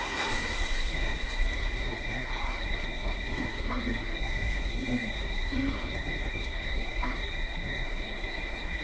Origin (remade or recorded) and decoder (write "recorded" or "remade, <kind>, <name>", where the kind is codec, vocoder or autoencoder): remade, codec, SNAC